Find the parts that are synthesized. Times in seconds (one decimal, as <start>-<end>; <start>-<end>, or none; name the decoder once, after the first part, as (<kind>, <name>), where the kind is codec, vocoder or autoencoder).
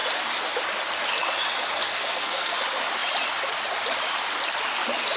1.9-2.6 (codec, SNAC)